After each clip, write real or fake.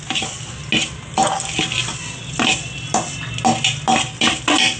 real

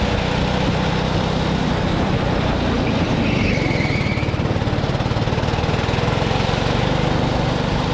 real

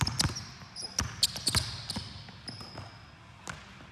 real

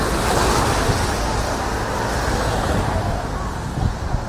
real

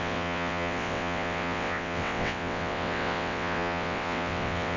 fake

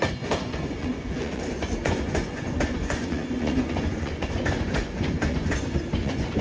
fake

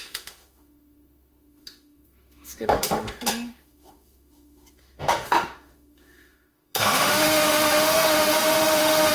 fake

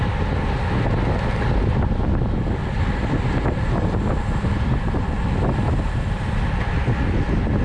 real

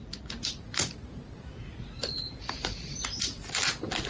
real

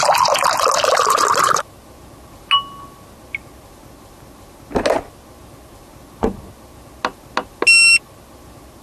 real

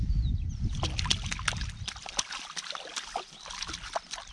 real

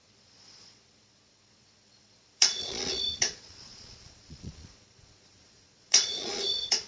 fake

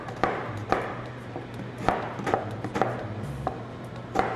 fake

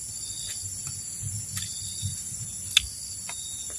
real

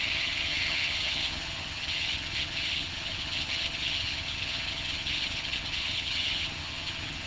fake